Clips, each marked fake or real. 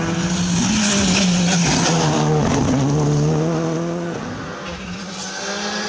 real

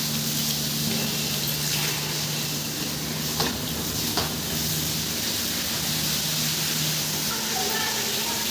real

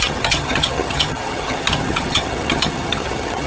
fake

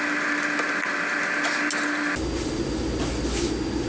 real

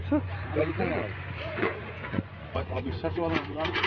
fake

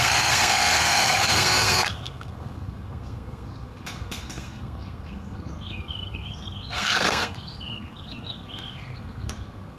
fake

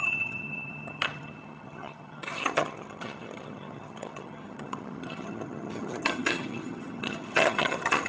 fake